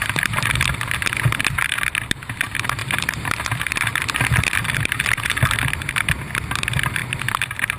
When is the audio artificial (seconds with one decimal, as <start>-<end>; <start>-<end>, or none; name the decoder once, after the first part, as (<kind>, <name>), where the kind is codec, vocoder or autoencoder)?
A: 2.8-5.9 (vocoder, BigVGAN v2)